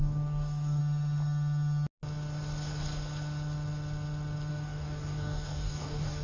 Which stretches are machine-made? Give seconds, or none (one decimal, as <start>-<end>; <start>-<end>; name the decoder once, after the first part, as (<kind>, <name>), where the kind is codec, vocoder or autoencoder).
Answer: 0.0-0.8 (codec, DAC); 4.5-6.2